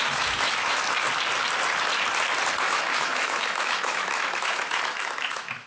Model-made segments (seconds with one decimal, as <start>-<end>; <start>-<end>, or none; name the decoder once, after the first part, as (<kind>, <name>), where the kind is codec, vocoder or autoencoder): 0.0-0.8 (autoencoder, DAC-VAE); 2.6-5.7